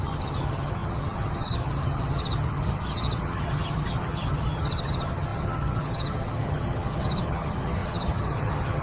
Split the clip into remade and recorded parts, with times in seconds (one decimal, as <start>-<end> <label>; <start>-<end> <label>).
0.0-8.8 remade